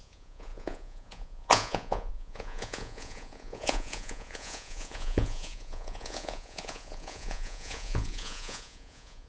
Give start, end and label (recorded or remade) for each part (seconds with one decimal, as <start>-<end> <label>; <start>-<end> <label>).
0.0-9.3 remade

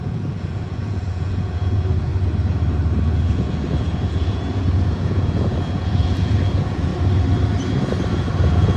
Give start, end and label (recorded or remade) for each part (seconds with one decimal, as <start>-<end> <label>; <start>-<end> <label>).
0.0-2.1 remade; 2.1-3.0 recorded; 3.0-6.9 remade; 6.9-8.3 recorded; 8.3-8.8 remade

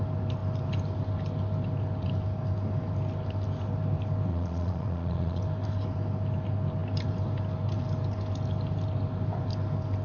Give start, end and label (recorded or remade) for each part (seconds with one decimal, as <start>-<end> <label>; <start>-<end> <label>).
0.0-4.3 recorded; 4.3-5.4 remade; 5.4-10.0 recorded

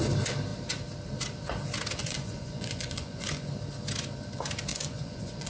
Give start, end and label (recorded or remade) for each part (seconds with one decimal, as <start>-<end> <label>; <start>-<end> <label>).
0.0-2.0 recorded; 2.0-3.5 remade; 3.5-4.7 recorded; 4.7-5.5 remade